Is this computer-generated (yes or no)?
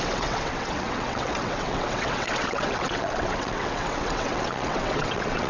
yes